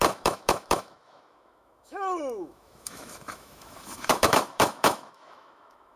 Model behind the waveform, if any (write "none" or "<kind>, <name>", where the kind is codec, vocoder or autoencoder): autoencoder, DAC-VAE